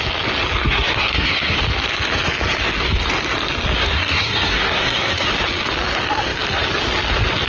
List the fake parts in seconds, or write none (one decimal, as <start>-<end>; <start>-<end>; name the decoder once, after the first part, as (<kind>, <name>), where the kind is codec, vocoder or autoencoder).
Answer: 0.6-1.6 (codec, SNAC); 3.8-5.3